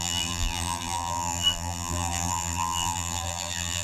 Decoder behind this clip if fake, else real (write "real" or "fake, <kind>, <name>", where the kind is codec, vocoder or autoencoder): fake, vocoder, BigVGAN v2